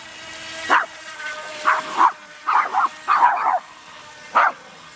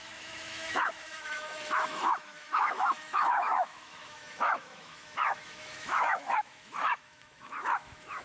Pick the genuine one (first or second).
first